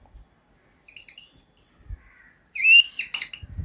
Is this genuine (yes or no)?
yes